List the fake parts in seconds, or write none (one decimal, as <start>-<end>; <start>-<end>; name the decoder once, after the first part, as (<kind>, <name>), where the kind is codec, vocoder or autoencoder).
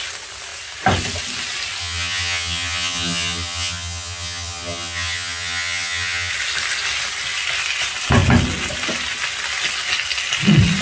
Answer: 1.8-6.3 (vocoder, HiFi-GAN)